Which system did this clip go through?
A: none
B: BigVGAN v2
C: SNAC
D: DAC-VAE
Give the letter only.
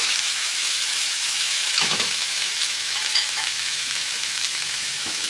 D